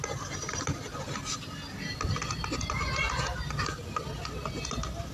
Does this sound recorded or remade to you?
recorded